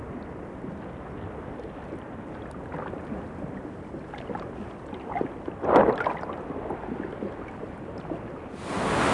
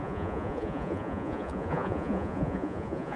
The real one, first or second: first